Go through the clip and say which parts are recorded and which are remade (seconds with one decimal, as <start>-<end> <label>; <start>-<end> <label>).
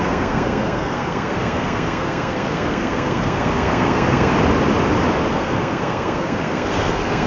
0.0-4.3 remade; 4.3-5.3 recorded; 5.3-7.3 remade